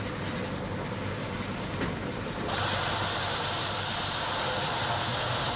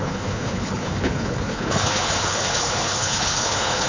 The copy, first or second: second